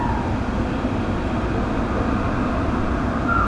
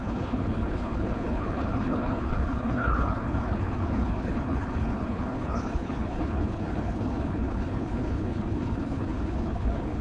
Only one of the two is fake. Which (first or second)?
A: second